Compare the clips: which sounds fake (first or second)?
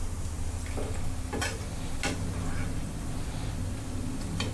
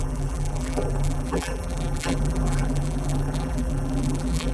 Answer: second